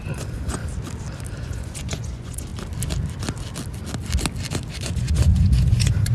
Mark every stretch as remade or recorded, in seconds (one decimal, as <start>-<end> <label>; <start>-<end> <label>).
0.0-0.6 remade; 0.6-1.4 recorded; 1.4-2.5 remade; 2.5-4.7 recorded; 4.7-6.1 remade